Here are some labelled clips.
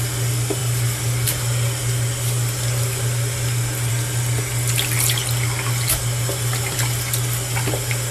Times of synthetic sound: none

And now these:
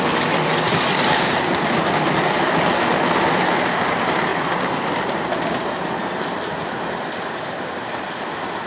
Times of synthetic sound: none